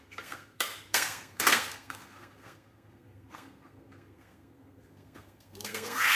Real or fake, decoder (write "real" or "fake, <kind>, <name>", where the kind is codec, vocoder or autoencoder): fake, codec, SNAC